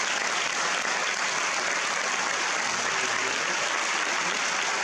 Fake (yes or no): no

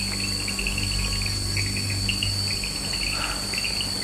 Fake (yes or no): no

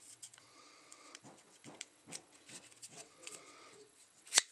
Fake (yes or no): yes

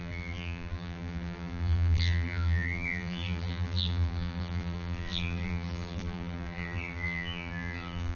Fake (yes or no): yes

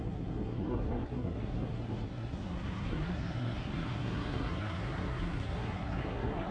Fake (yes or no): yes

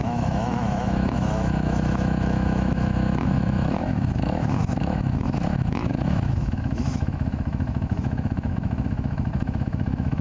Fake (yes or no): yes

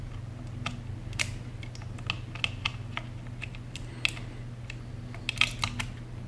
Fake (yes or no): no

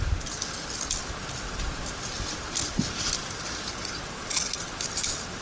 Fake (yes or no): no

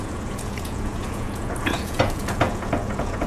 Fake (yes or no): yes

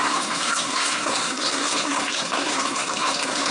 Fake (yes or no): yes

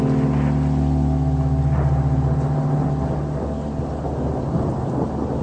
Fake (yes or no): no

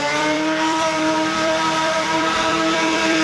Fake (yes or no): yes